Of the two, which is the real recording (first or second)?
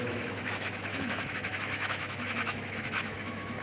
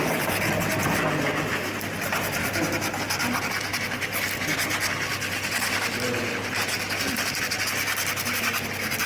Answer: second